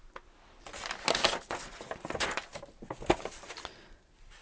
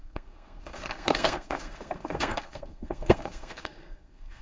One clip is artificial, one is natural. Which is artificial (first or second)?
second